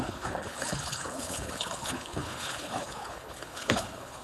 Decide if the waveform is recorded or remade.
remade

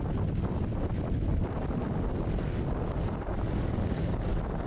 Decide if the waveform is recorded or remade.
recorded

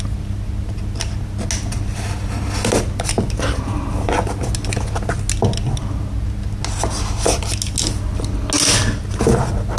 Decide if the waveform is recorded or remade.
recorded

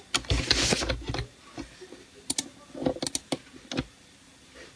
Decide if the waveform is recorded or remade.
recorded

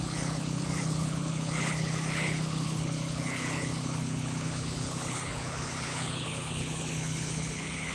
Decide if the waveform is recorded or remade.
remade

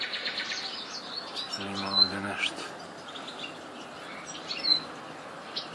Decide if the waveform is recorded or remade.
recorded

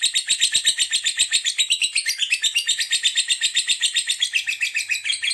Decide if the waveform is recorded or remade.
recorded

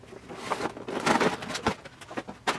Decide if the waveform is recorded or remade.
recorded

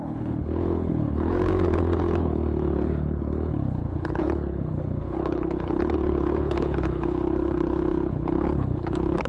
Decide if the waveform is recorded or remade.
remade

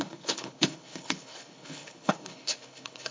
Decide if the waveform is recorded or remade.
remade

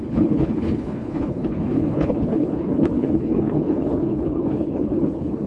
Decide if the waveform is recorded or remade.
remade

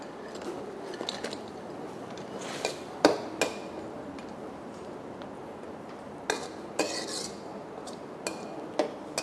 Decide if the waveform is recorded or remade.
recorded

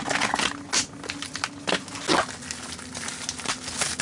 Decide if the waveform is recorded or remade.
recorded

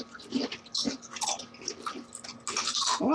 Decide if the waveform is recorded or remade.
recorded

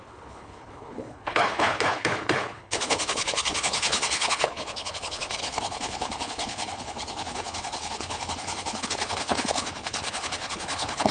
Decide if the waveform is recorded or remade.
remade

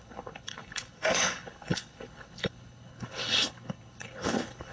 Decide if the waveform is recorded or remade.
remade